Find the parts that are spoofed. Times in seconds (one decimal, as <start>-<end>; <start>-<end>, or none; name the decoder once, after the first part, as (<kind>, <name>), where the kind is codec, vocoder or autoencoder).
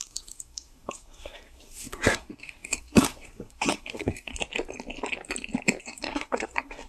0.0-4.3 (codec, SNAC); 5.8-6.9